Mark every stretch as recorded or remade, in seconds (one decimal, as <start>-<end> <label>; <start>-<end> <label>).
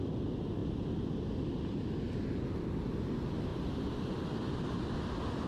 0.0-5.5 recorded